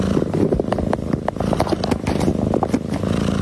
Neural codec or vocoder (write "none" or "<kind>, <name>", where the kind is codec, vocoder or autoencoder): none